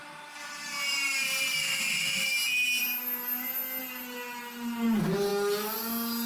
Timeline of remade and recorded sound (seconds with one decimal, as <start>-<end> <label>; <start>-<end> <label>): 0.0-6.3 recorded